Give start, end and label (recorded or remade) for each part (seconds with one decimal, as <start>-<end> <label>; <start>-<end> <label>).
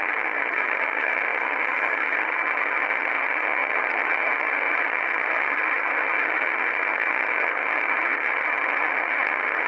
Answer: 0.0-9.7 remade